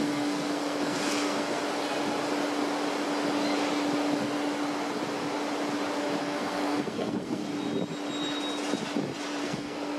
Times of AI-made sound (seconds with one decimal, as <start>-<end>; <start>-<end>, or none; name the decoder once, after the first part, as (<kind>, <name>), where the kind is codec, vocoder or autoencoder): 0.0-1.6 (codec, SNAC); 6.2-7.4; 9.4-10.0